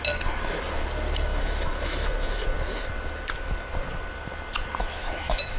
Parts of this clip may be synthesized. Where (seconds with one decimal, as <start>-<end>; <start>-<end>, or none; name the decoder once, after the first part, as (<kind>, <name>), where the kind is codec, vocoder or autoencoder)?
1.3-2.4 (autoencoder, DAC-VAE); 4.8-5.6